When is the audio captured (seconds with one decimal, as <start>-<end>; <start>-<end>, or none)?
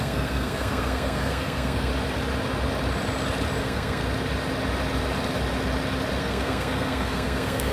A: 1.9-3.6; 4.0-6.2